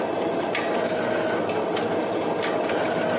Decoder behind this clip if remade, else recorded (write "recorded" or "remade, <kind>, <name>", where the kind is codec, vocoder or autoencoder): recorded